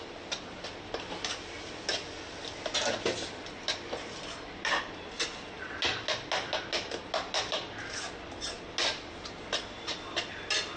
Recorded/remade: recorded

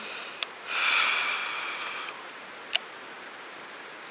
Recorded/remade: recorded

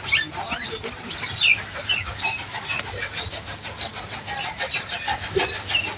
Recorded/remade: recorded